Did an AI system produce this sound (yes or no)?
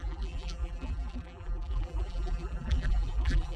yes